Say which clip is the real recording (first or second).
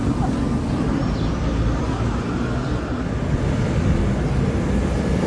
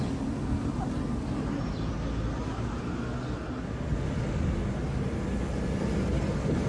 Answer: second